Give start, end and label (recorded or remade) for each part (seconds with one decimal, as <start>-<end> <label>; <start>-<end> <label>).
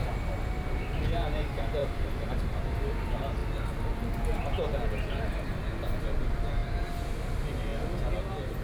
0.0-1.8 recorded; 1.8-2.7 remade; 2.7-8.6 recorded